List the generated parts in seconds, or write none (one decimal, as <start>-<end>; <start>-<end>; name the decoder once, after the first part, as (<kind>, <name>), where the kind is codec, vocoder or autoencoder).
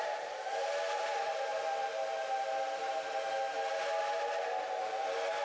none